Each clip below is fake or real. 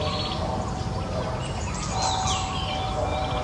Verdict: real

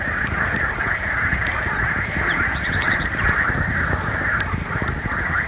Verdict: real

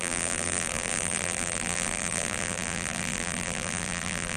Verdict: fake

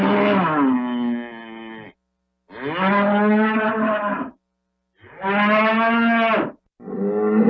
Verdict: real